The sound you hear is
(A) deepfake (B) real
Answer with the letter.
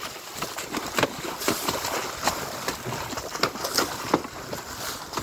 B